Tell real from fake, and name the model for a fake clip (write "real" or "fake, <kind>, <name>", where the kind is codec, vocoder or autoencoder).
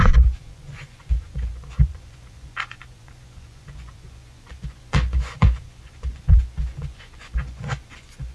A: fake, vocoder, Vocos